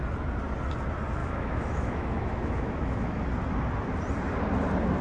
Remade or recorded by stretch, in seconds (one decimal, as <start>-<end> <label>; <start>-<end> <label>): 0.0-1.2 recorded; 1.2-3.2 remade; 3.2-5.0 recorded

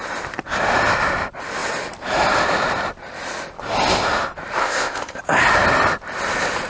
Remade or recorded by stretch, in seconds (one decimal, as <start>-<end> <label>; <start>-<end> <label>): 0.0-4.6 recorded; 4.6-5.2 remade; 5.2-6.7 recorded

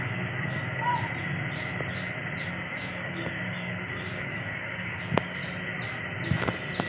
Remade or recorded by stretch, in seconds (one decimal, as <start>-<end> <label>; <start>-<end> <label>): 0.0-0.9 remade; 0.9-2.5 recorded; 2.5-5.4 remade; 5.4-6.9 recorded